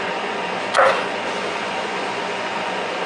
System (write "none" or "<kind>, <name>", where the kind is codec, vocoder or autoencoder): vocoder, Vocos